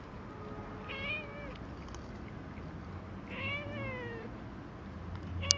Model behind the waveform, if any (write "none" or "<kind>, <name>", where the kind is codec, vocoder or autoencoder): none